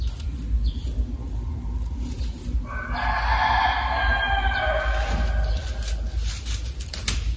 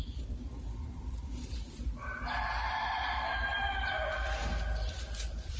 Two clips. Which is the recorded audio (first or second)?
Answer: first